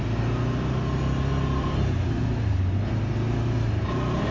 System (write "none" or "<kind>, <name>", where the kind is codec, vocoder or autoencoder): none